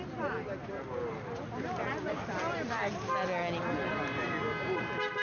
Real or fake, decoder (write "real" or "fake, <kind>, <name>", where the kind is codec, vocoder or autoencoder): real